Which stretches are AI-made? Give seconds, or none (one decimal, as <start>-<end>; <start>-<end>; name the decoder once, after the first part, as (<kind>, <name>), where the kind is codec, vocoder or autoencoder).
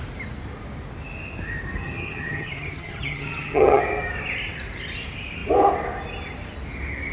1.8-3.8 (vocoder, HiFi-GAN)